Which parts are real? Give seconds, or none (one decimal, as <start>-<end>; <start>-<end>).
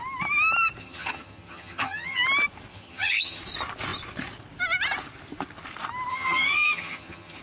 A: 0.0-0.8; 2.2-2.7; 3.4-6.1